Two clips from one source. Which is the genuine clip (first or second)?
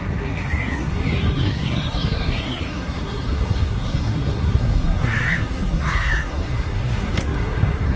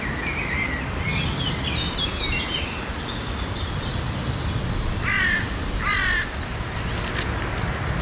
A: second